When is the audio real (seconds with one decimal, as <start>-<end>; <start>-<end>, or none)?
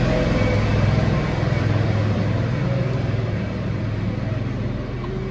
0.0-0.7; 3.8-5.3